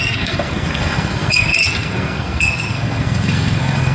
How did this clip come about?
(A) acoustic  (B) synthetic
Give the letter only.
B